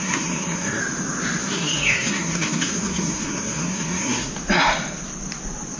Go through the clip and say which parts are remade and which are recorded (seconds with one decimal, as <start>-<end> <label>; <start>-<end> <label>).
0.0-0.8 remade; 0.8-1.4 recorded; 1.4-4.3 remade; 4.3-5.8 recorded